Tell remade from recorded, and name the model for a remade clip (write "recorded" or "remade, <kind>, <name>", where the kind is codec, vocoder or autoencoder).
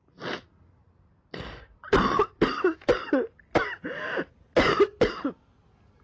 recorded